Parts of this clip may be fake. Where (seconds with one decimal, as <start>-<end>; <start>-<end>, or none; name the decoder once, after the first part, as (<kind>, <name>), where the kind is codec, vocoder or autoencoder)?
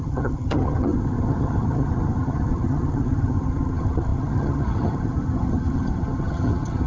0.0-6.9 (vocoder, HiFi-GAN)